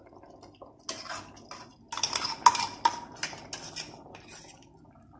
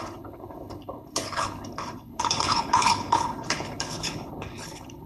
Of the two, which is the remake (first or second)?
second